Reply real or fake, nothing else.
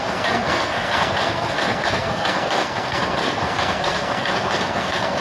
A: fake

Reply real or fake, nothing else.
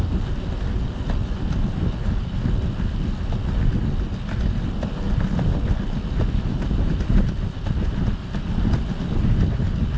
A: real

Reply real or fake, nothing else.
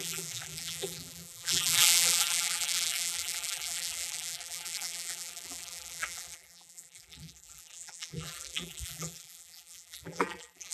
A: fake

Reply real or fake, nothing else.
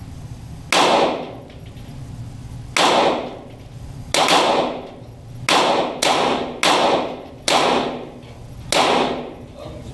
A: real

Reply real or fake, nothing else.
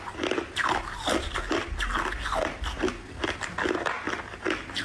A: real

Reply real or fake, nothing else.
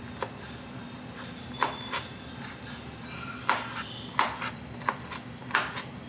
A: real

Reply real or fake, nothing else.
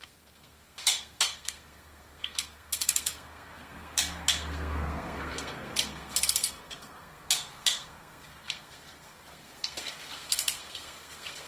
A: fake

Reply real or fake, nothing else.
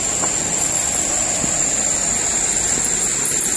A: real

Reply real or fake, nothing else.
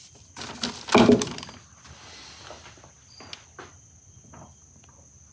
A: real